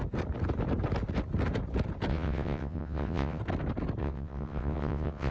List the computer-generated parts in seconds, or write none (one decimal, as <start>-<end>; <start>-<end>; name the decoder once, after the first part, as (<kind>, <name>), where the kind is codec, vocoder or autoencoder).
2.1-3.4 (vocoder, WaveNeXt); 4.0-5.3